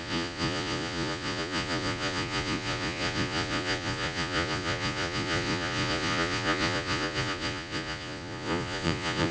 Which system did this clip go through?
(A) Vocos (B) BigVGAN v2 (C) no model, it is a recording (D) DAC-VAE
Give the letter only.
A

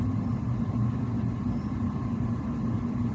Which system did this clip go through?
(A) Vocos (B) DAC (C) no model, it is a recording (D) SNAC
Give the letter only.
C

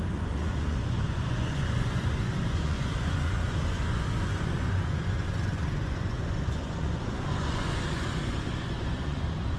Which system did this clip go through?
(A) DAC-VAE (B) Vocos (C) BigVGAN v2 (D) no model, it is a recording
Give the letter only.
B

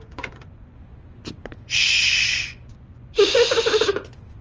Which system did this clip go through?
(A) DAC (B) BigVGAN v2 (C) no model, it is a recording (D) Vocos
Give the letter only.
D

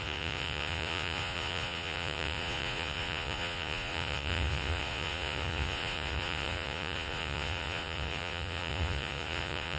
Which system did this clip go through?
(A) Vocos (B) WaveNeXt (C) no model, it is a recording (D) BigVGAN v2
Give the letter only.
A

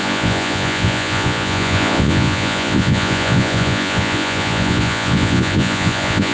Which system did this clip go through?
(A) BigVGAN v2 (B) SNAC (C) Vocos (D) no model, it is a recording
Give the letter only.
C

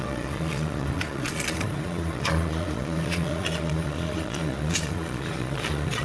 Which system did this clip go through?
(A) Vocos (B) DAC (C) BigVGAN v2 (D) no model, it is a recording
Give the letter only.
A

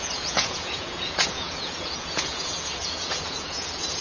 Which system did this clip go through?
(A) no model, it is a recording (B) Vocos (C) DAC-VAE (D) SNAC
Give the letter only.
B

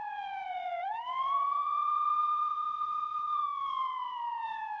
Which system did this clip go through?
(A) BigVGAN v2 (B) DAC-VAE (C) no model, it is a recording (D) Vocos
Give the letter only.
D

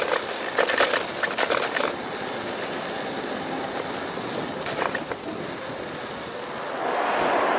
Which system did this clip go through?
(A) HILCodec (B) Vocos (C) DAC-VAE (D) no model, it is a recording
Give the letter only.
D